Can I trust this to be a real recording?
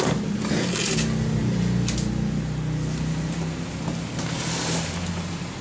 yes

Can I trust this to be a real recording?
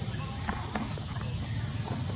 yes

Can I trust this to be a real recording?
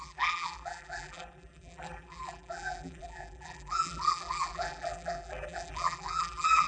no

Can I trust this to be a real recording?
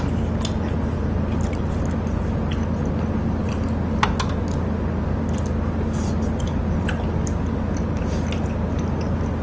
yes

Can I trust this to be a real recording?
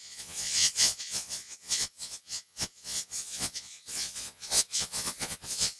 no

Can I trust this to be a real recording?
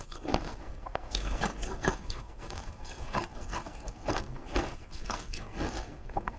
no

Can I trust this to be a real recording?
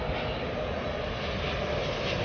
yes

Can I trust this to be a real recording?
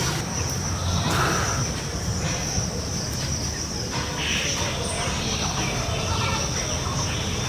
yes